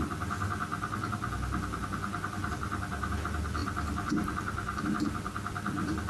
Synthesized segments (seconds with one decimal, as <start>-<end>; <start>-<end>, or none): none